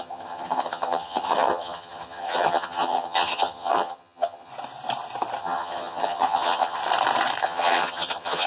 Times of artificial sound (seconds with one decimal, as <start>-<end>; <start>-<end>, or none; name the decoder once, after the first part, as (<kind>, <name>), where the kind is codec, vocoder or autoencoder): 0.0-4.5 (vocoder, HiFi-GAN); 5.4-6.8; 7.4-8.5